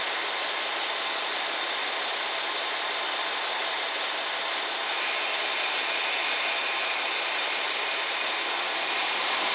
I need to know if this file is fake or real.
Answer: real